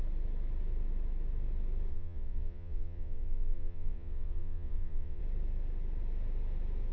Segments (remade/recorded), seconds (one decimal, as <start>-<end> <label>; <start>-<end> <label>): 0.0-1.9 recorded; 1.9-5.2 remade; 5.2-6.9 recorded